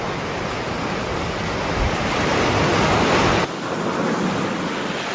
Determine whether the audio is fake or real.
real